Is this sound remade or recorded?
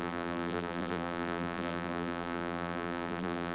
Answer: remade